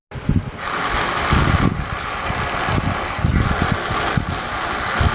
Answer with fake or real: real